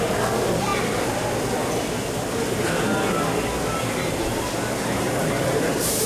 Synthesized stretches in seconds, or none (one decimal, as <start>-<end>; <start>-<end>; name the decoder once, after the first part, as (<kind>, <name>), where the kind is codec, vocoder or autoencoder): 5.0-6.1 (vocoder, BigVGAN v2)